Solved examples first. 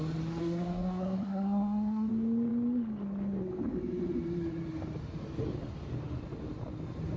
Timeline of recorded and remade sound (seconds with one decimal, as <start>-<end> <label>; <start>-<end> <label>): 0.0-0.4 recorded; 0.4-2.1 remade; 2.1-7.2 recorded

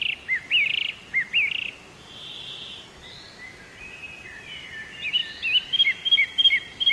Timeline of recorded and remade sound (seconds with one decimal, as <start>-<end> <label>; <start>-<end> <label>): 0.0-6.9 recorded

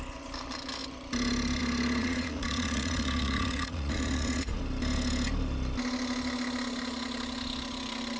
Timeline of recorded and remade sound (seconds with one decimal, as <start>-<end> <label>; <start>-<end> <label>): 0.0-2.0 recorded; 2.0-4.6 remade; 4.6-8.2 recorded

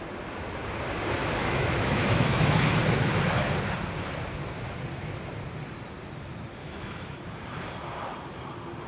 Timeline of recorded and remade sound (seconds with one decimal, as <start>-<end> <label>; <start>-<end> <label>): 0.0-1.2 recorded; 1.2-2.6 remade; 2.6-6.6 recorded; 6.6-7.2 remade; 7.2-8.9 recorded

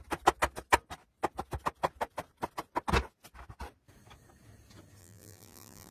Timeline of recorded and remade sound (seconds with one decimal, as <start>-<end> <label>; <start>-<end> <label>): 0.0-5.0 recorded; 5.0-5.9 remade

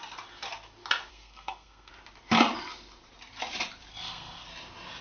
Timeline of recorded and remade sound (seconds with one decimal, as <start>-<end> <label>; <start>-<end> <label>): 0.0-1.1 recorded; 1.1-1.9 remade; 1.9-3.9 recorded; 3.9-4.5 remade; 4.5-5.0 recorded